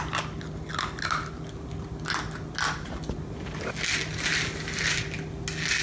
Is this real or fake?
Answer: real